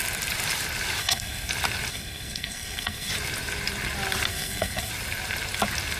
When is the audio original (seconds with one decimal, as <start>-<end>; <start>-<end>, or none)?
0.0-1.0; 1.5-1.9; 3.1-4.3; 4.9-6.0